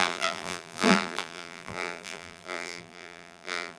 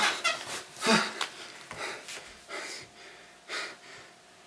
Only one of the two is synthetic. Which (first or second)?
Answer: first